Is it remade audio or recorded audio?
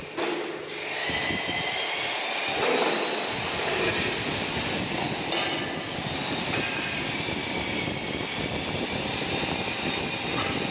recorded